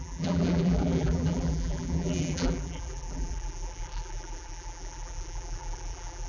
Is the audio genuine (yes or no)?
no